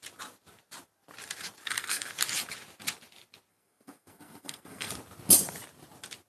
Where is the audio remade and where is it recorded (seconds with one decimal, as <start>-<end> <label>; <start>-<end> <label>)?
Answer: 0.0-1.6 recorded; 1.6-2.1 remade; 2.1-3.5 recorded; 3.5-4.9 remade; 4.9-6.3 recorded